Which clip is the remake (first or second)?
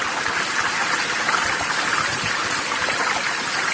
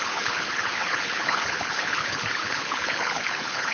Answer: second